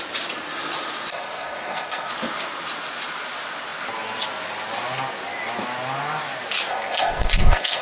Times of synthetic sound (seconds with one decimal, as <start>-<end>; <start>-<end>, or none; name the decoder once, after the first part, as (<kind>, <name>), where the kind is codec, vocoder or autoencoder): 1.1-2.1 (codec, SNAC); 6.7-7.8